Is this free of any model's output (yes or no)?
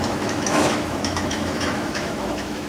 no